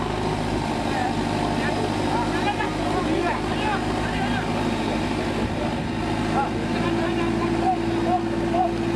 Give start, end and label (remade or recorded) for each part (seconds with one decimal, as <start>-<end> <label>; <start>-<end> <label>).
0.0-9.0 recorded

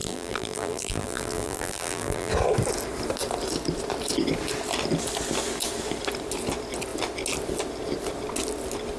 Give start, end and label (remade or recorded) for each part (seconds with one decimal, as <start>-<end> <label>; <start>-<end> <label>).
0.0-2.3 remade; 2.3-9.0 recorded

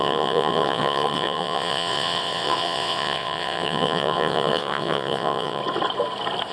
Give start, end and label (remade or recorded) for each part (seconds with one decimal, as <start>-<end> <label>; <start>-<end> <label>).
0.0-5.6 remade; 5.6-6.5 recorded

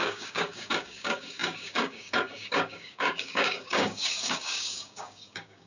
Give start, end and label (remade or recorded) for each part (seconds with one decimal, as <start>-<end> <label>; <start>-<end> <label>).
0.0-5.7 remade

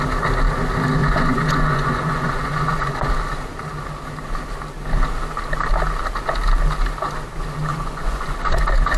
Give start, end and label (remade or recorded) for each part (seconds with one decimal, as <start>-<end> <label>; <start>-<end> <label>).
0.0-1.0 recorded; 1.0-3.1 remade; 3.1-7.7 recorded; 7.7-8.6 remade; 8.6-9.0 recorded

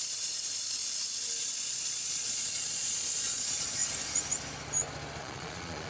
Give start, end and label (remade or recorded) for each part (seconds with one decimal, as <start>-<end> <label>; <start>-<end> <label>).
0.0-0.8 remade; 0.8-1.7 recorded; 1.7-3.8 remade; 3.8-5.2 recorded; 5.2-5.9 remade

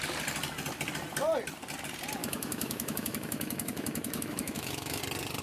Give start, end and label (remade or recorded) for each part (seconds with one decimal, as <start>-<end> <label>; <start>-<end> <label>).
0.0-2.2 recorded; 2.2-5.0 remade; 5.0-5.4 recorded